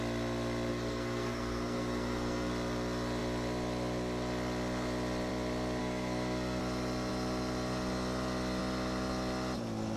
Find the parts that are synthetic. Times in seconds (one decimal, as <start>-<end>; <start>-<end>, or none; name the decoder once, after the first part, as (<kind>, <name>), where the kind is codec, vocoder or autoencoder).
0.7-2.5 (codec, SNAC); 5.8-6.6